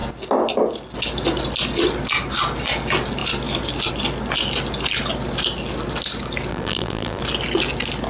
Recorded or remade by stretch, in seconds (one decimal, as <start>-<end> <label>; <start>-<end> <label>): 0.0-6.5 recorded; 6.5-7.2 remade; 7.2-8.1 recorded